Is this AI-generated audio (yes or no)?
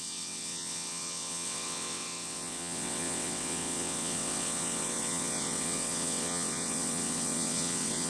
yes